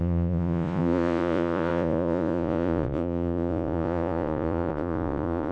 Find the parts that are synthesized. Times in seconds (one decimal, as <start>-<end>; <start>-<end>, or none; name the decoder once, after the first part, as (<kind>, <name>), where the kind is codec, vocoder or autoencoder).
0.0-5.5 (vocoder, Vocos)